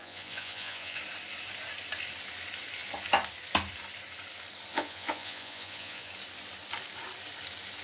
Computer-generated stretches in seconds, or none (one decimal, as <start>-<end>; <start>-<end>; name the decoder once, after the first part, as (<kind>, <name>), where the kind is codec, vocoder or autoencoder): 0.0-1.0 (vocoder, Vocos); 4.7-6.1